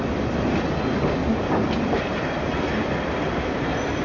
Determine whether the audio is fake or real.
real